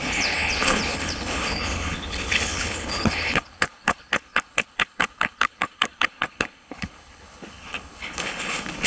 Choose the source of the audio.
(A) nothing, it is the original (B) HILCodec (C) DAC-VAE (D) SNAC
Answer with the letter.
B